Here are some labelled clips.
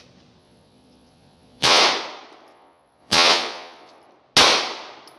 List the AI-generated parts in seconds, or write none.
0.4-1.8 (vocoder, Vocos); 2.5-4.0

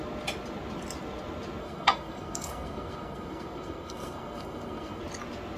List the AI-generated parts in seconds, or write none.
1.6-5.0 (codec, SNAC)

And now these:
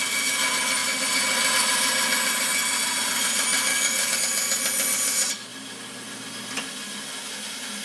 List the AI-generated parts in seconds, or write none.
3.7-4.2 (codec, DAC)

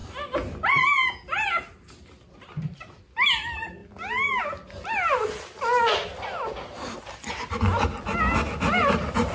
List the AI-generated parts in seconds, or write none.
none

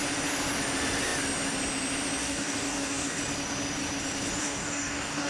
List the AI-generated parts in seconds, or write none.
2.2-3.2 (codec, DAC); 4.4-5.3